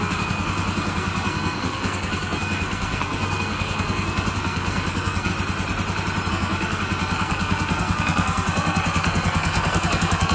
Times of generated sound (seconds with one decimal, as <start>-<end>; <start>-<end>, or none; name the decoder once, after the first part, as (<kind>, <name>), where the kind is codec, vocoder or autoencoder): 0.0-5.3 (codec, SNAC); 6.3-10.3